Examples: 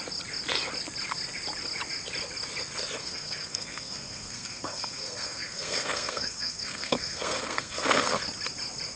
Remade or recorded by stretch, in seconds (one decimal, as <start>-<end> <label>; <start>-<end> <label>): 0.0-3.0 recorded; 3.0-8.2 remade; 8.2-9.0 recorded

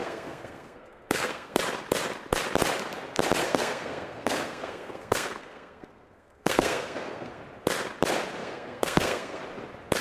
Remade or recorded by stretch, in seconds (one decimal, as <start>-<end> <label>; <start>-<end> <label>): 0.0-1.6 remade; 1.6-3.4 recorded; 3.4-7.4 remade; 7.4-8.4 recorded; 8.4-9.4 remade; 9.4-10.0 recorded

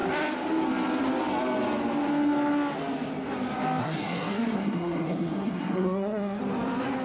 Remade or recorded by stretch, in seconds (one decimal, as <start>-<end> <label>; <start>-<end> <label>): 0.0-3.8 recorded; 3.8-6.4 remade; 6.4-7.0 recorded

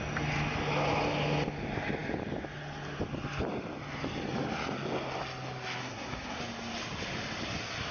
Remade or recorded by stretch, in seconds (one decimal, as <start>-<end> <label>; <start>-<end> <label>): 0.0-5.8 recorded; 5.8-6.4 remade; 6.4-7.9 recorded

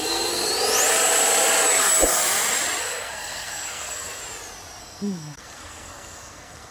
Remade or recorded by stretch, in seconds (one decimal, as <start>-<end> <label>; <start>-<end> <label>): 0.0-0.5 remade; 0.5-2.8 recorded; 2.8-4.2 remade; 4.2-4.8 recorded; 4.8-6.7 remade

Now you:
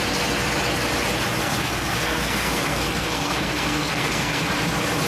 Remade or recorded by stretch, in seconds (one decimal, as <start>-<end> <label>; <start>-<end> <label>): 0.0-1.4 recorded; 1.4-4.5 remade; 4.5-5.1 recorded